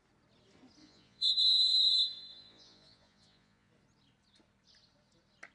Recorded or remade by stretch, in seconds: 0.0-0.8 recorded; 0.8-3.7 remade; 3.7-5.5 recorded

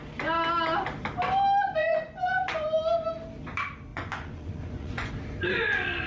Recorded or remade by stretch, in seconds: 0.0-1.8 recorded; 1.8-2.8 remade; 2.8-3.9 recorded; 3.9-5.1 remade; 5.1-6.1 recorded

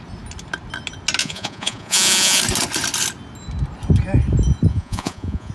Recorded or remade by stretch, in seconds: 0.0-1.2 recorded; 1.2-2.4 remade; 2.4-4.7 recorded; 4.7-5.5 remade

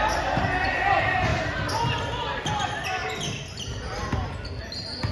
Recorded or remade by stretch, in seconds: 0.0-5.1 recorded

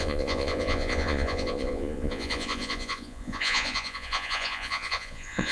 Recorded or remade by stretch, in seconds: 0.0-5.5 remade

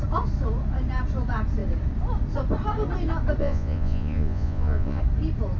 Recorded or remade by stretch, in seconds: 0.0-3.4 recorded; 3.4-5.0 remade; 5.0-5.6 recorded

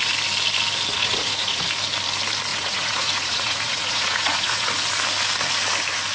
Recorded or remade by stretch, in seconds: 0.0-1.0 recorded; 1.0-1.6 remade; 1.6-2.5 recorded; 2.5-4.7 remade; 4.7-6.1 recorded